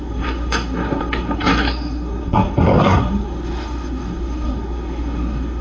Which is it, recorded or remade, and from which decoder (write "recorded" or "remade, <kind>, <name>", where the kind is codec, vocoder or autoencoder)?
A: remade, codec, SNAC